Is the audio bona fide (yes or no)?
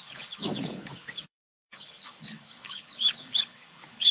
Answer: no